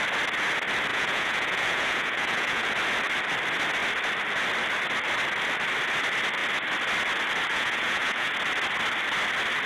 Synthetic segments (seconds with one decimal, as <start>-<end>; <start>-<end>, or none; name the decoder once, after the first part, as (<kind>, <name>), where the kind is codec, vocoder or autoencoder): 0.9-2.7 (vocoder, Vocos); 7.5-8.3